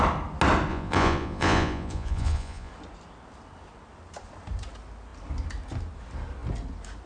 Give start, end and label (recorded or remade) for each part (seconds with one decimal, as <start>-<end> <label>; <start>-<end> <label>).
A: 0.0-0.7 recorded; 0.7-2.7 remade; 2.7-7.1 recorded